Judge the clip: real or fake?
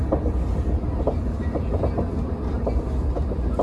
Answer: real